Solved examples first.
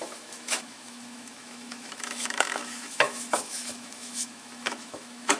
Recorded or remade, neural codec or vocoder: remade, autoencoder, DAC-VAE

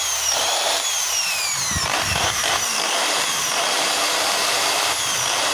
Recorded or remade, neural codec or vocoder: remade, vocoder, BigVGAN v2